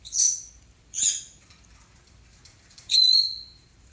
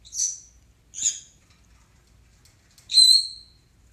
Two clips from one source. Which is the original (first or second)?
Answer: second